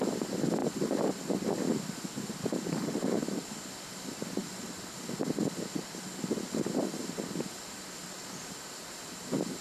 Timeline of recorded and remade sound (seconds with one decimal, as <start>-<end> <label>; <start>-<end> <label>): 0.0-9.6 recorded